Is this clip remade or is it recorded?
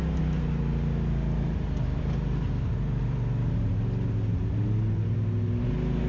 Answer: recorded